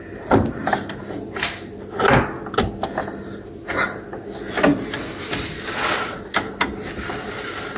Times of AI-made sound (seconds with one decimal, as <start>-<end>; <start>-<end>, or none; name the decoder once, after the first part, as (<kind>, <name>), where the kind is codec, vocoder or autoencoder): none